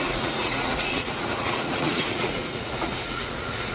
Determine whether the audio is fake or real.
fake